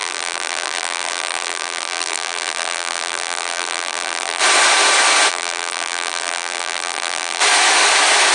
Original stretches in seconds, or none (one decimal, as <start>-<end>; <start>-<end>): 4.4-5.3; 7.4-8.3